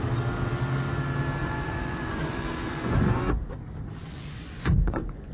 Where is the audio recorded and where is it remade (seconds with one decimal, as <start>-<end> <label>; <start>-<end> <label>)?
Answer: 0.0-1.4 recorded; 1.4-3.5 remade; 3.5-4.0 recorded; 4.0-5.3 remade